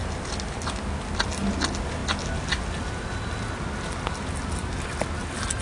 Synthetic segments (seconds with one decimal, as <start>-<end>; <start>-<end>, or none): none